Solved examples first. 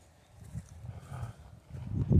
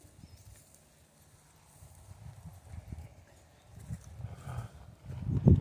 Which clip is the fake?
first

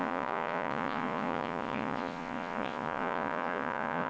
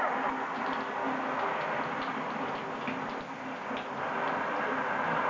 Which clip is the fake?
first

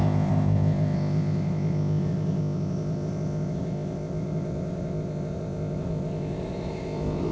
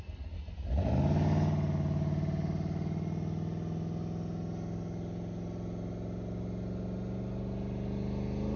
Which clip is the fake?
first